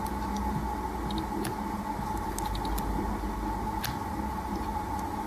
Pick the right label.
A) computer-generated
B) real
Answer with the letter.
B